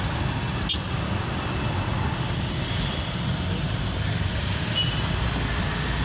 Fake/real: real